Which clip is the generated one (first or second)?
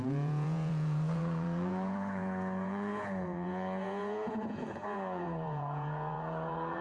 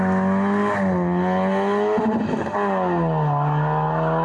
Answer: first